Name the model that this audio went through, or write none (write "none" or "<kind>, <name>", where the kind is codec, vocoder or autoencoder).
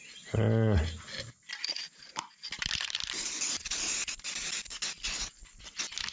none